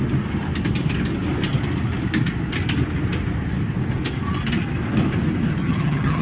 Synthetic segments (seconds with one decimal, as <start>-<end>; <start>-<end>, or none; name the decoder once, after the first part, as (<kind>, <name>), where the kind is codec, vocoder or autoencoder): 5.6-6.2 (vocoder, HiFi-GAN)